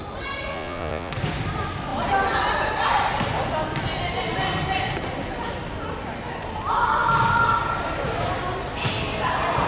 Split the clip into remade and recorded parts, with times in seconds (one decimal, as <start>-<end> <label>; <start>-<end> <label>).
0.0-0.5 recorded; 0.5-1.1 remade; 1.1-9.7 recorded